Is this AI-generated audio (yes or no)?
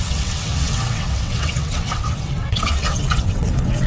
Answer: yes